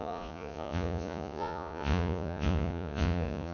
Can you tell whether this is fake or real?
fake